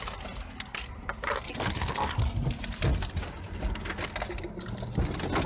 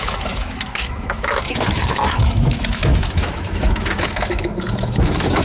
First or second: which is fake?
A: second